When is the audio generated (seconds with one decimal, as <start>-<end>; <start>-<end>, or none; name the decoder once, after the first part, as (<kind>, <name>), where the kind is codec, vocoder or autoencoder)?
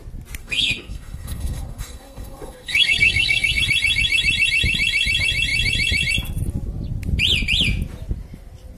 0.4-3.6 (codec, SNAC)